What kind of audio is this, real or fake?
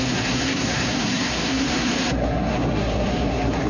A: fake